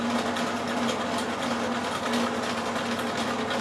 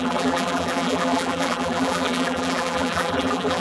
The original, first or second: first